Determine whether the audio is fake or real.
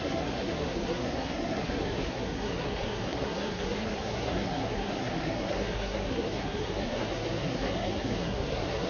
fake